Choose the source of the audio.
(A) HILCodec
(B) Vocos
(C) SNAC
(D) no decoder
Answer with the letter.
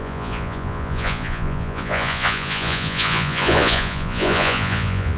B